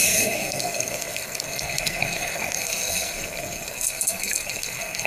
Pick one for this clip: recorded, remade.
remade